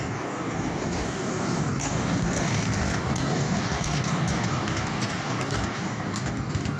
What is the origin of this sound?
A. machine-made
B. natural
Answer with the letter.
A